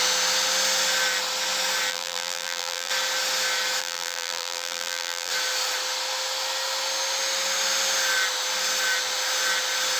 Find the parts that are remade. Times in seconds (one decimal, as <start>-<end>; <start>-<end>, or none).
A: 1.9-2.9; 3.8-5.3